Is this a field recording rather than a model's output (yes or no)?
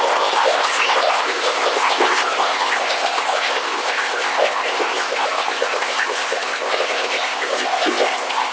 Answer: no